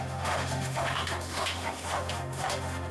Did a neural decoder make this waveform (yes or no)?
yes